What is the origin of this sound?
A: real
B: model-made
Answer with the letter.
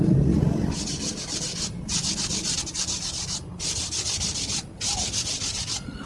A